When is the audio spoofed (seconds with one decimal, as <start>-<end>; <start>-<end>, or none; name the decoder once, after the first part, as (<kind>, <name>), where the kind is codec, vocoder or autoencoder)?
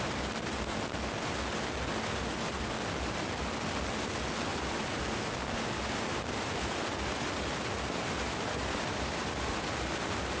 4.5-5.0 (vocoder, BigVGAN v2); 6.1-6.7; 8.6-9.2